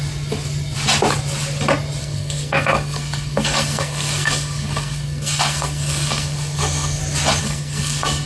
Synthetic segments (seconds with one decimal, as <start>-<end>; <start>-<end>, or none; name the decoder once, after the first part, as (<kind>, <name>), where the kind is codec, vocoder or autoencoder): 2.0-7.0 (codec, SNAC); 7.4-8.3